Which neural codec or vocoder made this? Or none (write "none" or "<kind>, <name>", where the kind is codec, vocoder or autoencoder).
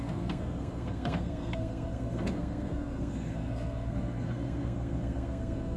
codec, SNAC